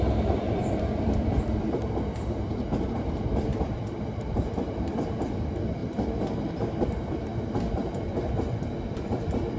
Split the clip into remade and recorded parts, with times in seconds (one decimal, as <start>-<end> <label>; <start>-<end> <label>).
0.0-5.8 remade; 5.8-6.7 recorded; 6.7-9.6 remade